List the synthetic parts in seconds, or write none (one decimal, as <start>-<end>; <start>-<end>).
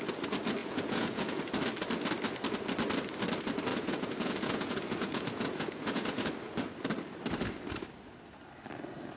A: 0.6-1.4; 3.7-6.3